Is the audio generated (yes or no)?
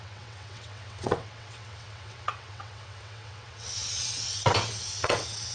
yes